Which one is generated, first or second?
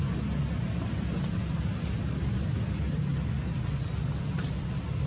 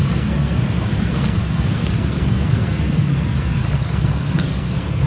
second